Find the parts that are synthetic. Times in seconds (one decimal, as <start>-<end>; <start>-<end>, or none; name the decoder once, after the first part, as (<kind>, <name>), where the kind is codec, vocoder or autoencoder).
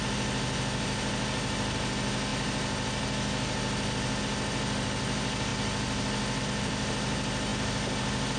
none